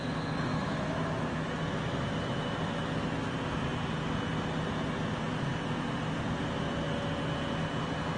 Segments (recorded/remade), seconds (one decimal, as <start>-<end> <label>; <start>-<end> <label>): 0.0-0.5 recorded; 0.5-3.3 remade; 3.3-8.2 recorded